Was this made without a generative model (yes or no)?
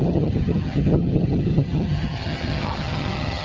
no